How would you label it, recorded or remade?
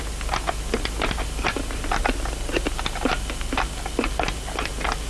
recorded